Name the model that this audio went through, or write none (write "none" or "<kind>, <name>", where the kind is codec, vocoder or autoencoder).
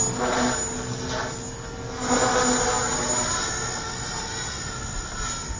none